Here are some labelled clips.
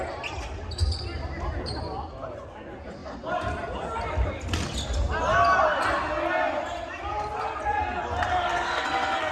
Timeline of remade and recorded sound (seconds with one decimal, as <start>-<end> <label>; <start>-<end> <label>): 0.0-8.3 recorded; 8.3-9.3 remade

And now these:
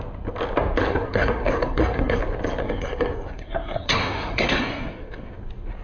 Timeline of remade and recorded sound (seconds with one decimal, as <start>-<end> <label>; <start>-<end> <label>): 0.0-0.9 recorded; 0.9-2.2 remade; 2.2-2.6 recorded; 2.6-5.3 remade; 5.3-5.8 recorded

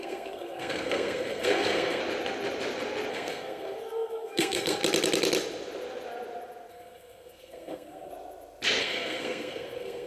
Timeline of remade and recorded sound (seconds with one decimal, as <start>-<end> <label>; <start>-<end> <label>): 0.0-2.0 remade; 2.0-3.1 recorded; 3.1-4.8 remade; 4.8-6.7 recorded; 6.7-8.1 remade; 8.1-8.8 recorded; 8.8-10.1 remade